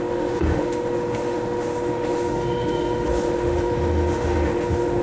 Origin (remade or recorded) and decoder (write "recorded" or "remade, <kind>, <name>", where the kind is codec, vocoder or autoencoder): remade, autoencoder, DAC-VAE